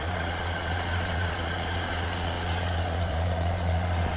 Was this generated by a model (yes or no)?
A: yes